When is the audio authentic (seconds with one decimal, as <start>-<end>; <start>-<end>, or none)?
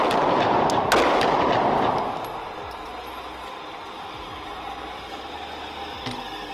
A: 0.0-4.3; 5.3-6.5